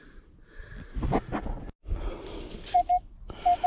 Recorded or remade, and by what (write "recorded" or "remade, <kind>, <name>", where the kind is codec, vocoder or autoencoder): recorded